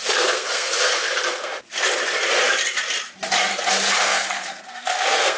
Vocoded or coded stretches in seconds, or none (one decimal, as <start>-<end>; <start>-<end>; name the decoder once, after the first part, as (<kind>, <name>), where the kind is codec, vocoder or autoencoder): 0.0-1.5 (codec, SNAC); 4.0-5.4